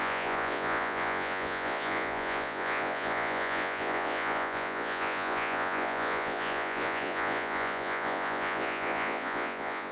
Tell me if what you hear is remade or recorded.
remade